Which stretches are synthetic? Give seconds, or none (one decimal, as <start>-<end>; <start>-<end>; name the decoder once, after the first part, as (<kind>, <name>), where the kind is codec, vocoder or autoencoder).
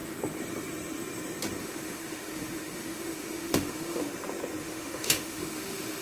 1.6-4.1 (autoencoder, DAC-VAE); 4.6-6.0